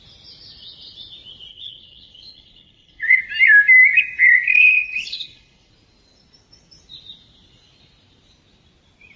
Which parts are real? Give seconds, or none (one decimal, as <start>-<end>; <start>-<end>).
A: 0.0-1.5; 3.2-4.5; 5.7-9.2